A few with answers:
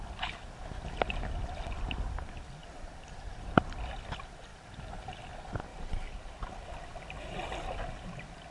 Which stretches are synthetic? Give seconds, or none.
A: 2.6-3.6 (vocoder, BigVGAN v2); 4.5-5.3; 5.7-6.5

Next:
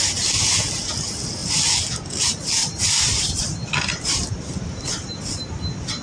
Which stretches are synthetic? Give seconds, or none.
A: 2.6-5.5 (vocoder, BigVGAN v2)

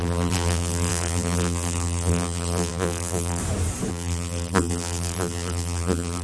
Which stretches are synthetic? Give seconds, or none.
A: 0.0-3.4 (vocoder, BigVGAN v2); 3.9-6.2

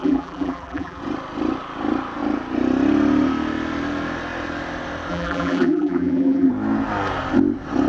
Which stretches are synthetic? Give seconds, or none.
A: 0.0-1.0 (vocoder, BigVGAN v2); 5.1-6.5

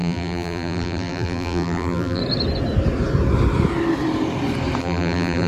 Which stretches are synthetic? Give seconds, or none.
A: 0.0-2.2 (vocoder, BigVGAN v2); 4.8-5.5

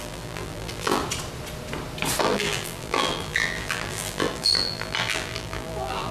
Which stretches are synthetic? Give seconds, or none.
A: 0.0-1.0 (vocoder, BigVGAN v2); 2.2-6.1

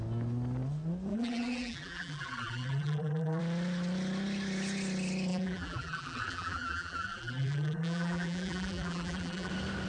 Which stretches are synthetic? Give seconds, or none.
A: 1.1-3.4 (vocoder, BigVGAN v2); 5.3-9.5